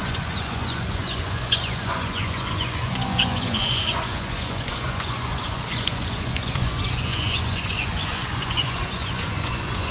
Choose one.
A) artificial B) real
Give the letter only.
A